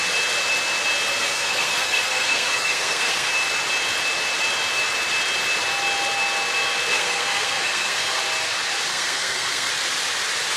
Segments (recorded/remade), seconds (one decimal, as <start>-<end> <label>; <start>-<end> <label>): 0.0-1.2 recorded; 1.2-3.3 remade; 3.3-6.9 recorded; 6.9-8.2 remade; 8.2-8.9 recorded; 8.9-9.7 remade; 9.7-10.6 recorded